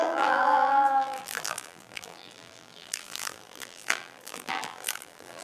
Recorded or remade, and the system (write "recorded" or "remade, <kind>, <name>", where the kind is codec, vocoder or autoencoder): remade, vocoder, BigVGAN v2